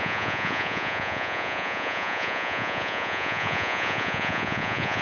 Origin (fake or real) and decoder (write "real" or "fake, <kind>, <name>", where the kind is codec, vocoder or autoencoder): fake, vocoder, Vocos